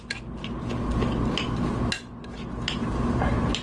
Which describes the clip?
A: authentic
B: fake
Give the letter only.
A